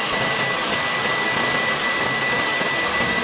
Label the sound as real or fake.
real